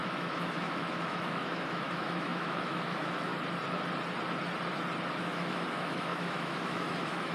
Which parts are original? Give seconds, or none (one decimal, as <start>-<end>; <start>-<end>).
3.3-5.2